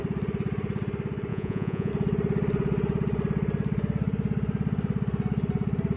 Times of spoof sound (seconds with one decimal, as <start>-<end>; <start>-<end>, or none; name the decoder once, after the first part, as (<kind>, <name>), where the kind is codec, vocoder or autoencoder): 1.3-1.9 (vocoder, Vocos)